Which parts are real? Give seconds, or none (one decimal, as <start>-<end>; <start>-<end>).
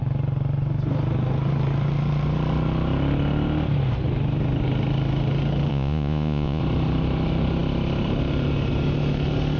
0.0-5.7; 6.6-9.6